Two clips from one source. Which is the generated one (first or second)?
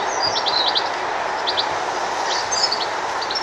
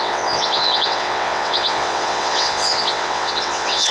second